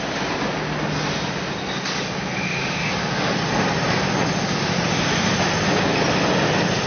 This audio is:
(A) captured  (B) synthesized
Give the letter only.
A